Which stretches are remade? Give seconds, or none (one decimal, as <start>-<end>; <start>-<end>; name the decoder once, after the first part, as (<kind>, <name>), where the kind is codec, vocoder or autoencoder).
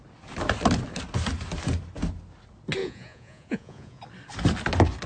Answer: 2.8-4.0 (vocoder, Vocos)